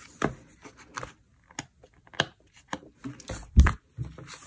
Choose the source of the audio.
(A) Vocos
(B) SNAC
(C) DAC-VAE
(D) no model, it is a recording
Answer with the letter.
D